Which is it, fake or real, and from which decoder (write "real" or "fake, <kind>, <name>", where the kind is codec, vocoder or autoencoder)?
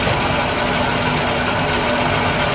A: real